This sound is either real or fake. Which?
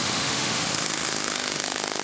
fake